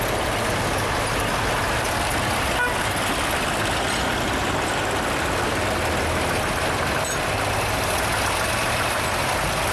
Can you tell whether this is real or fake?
real